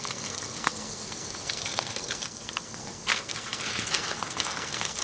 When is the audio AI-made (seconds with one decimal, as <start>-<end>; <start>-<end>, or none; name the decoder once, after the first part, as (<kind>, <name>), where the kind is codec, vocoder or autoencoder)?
0.0-5.0 (codec, SNAC)